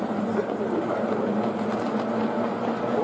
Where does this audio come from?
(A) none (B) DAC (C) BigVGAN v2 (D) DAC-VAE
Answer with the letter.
A